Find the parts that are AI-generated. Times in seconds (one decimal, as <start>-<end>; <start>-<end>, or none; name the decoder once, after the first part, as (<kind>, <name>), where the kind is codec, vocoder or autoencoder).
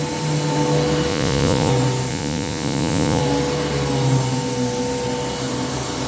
1.1-1.7 (vocoder, Vocos); 2.1-3.2